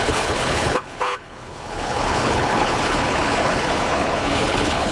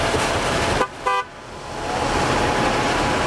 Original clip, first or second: second